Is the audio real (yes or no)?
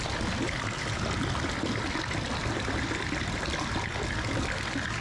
yes